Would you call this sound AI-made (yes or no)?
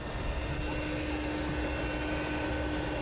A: no